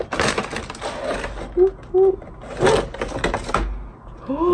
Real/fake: real